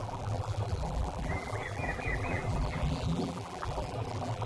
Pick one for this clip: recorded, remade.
remade